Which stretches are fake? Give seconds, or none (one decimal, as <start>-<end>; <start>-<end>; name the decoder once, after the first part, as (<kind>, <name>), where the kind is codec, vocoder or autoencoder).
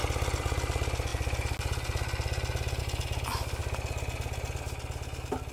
none